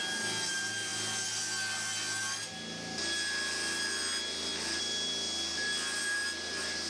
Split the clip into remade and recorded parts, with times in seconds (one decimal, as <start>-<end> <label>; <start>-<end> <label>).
0.0-6.9 recorded